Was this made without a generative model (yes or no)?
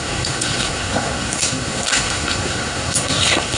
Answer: no